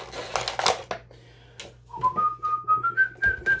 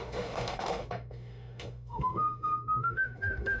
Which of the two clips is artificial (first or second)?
second